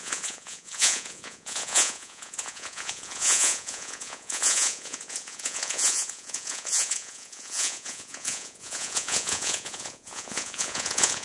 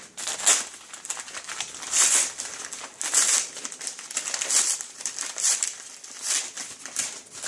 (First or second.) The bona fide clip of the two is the second